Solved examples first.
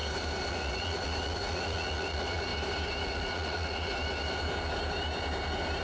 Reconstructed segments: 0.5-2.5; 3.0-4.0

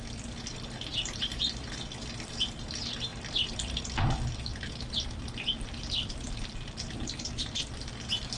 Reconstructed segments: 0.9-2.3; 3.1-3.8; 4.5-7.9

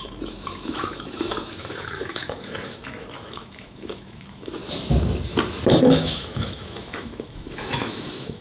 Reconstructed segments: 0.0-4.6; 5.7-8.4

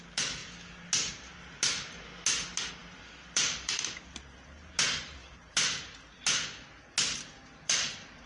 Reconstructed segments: 2.8-3.8; 5.2-6.2; 7.3-8.3

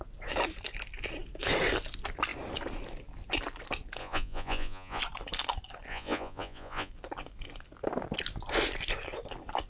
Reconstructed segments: 4.0-5.0; 5.9-6.9

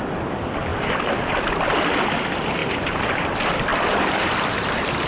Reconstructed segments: 0.7-1.5; 2.6-3.1; 3.7-5.1

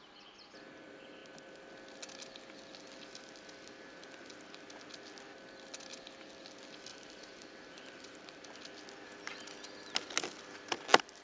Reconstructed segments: 6.9-8.6